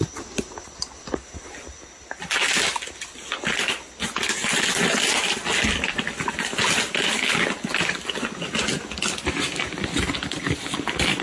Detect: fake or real real